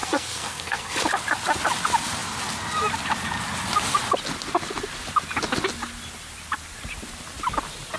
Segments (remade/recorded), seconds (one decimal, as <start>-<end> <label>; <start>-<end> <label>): 0.0-1.0 remade; 1.0-8.0 recorded